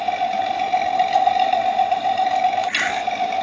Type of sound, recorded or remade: recorded